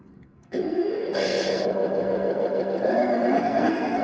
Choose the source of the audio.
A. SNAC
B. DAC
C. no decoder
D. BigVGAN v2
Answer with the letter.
A